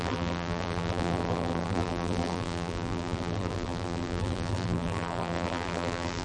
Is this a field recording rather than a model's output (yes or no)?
no